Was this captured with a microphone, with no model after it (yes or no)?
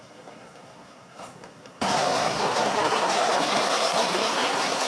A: no